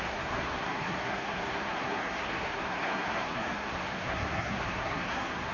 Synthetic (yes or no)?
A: yes